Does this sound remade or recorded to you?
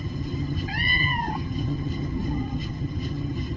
remade